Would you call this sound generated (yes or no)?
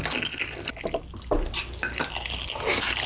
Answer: no